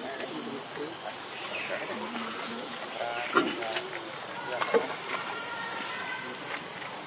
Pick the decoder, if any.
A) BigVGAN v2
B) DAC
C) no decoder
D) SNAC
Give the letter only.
C